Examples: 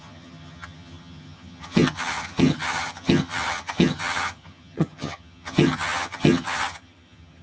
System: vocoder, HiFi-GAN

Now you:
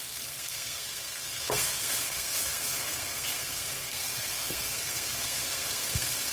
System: codec, SNAC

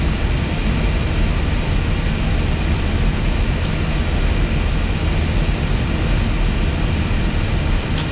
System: none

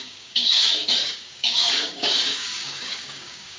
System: codec, DAC